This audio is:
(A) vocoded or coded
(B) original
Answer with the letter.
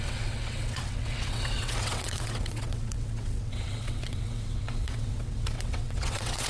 A